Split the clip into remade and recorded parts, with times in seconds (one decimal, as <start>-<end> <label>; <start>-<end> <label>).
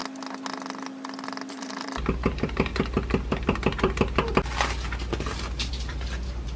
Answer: 0.0-1.5 recorded; 1.5-2.7 remade; 2.7-5.7 recorded; 5.7-6.6 remade